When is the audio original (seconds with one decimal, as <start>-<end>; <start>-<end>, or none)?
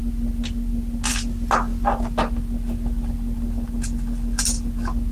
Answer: 0.0-5.1